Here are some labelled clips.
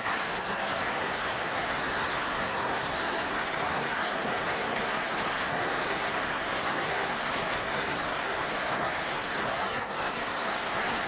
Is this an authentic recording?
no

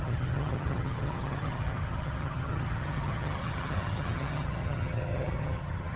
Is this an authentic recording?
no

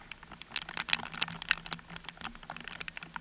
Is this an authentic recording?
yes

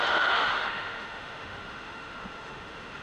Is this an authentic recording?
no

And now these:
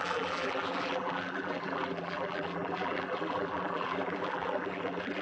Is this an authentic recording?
no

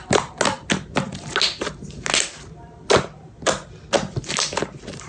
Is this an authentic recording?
yes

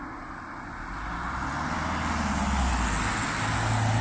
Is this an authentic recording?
yes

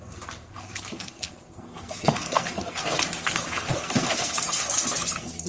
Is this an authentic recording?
no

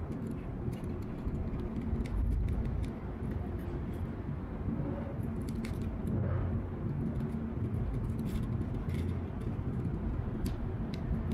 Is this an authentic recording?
yes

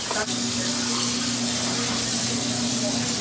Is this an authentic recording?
yes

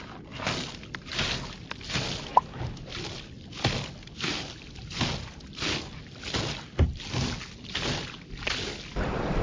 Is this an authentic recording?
yes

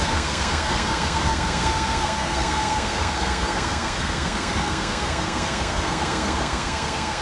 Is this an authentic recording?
no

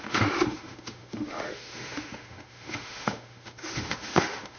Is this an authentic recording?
no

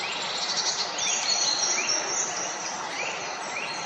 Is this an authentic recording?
yes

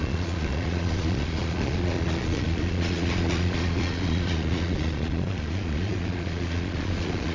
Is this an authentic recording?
no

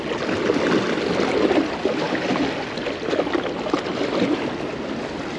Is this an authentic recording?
yes